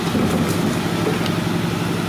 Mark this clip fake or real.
real